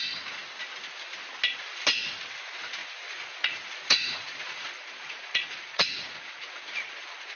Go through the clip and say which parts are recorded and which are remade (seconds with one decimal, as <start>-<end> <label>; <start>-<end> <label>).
0.0-2.8 recorded; 2.8-7.3 remade